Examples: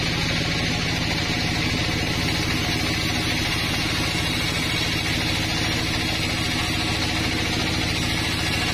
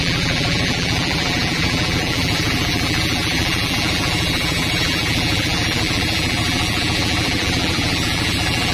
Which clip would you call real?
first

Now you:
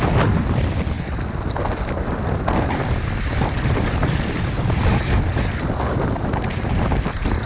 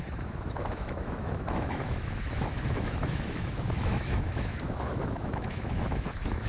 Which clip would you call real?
first